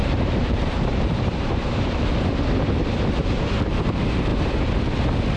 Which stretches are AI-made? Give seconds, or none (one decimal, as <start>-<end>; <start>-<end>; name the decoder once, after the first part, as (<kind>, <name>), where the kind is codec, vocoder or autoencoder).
0.0-2.1 (vocoder, BigVGAN v2)